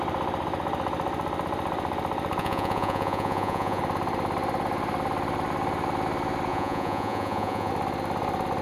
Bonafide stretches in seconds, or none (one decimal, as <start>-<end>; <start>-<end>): 0.0-2.4; 3.8-6.5; 7.7-8.6